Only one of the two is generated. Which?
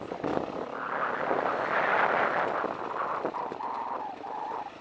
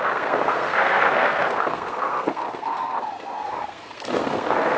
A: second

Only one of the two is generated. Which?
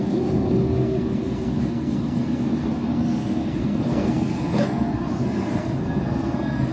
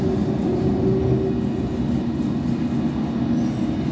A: first